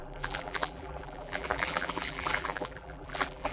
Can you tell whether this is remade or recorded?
remade